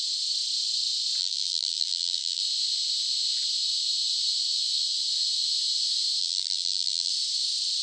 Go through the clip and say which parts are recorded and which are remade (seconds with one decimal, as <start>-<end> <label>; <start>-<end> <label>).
0.0-1.2 recorded; 1.2-2.4 remade; 2.4-6.2 recorded; 6.2-7.1 remade; 7.1-7.8 recorded